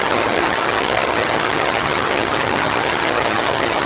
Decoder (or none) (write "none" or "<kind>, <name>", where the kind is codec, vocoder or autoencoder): vocoder, HiFi-GAN